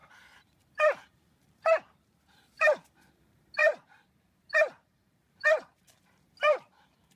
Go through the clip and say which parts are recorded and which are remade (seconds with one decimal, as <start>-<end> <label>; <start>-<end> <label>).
0.0-7.2 remade